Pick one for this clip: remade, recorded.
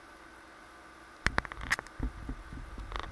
recorded